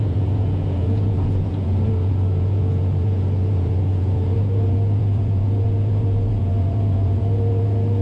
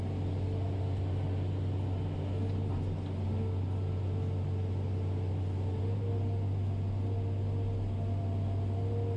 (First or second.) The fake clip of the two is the first